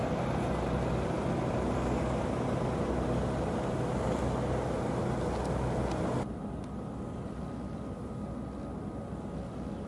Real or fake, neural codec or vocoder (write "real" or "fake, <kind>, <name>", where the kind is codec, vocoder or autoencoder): real